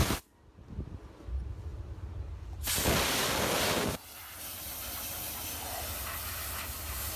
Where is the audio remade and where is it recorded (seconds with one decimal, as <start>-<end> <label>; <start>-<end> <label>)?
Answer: 0.0-1.7 recorded; 1.7-2.3 remade; 2.3-7.2 recorded